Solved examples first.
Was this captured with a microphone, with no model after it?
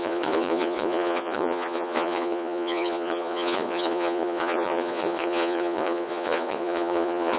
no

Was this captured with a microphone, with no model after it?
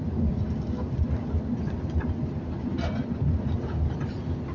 yes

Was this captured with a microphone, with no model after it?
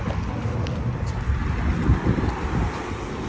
yes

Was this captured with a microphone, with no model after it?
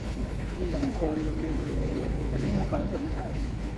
no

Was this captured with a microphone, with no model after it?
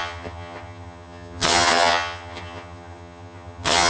no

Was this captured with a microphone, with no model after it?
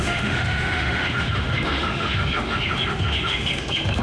no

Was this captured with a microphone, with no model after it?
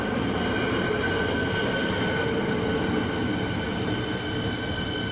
yes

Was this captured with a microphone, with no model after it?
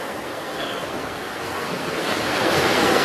no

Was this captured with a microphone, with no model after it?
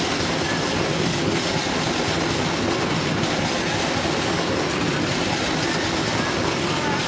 yes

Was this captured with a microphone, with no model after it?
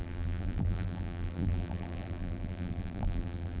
no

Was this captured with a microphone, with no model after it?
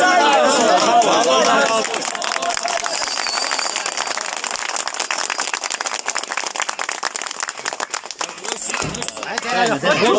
yes